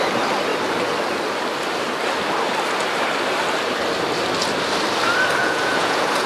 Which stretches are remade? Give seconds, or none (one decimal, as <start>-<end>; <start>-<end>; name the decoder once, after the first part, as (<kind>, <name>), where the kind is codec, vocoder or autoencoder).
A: 5.4-6.3 (vocoder, Vocos)